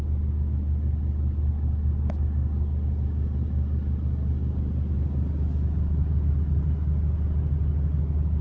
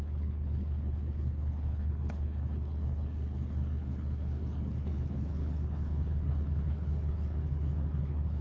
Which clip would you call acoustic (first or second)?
first